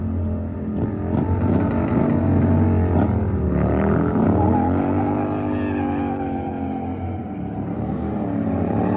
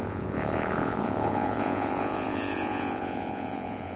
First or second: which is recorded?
first